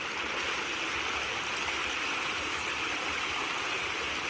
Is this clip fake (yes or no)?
no